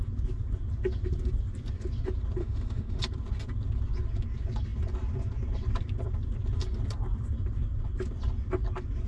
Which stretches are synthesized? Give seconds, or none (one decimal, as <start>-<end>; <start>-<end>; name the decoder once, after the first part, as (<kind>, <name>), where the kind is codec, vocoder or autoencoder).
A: 2.4-3.0 (autoencoder, DAC-VAE)